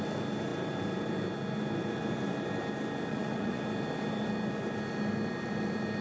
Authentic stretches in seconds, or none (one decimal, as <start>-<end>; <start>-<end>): 0.0-3.1; 3.6-6.0